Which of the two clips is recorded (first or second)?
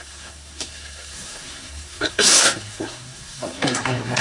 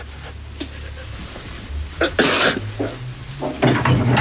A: second